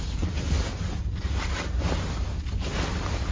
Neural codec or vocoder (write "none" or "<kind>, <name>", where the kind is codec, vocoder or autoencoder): none